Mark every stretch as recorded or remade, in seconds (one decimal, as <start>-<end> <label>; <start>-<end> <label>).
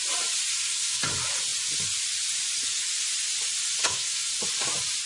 0.0-0.5 recorded; 0.5-1.0 remade; 1.0-3.8 recorded; 3.8-4.3 remade; 4.3-5.1 recorded